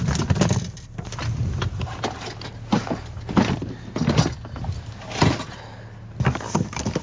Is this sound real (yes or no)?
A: yes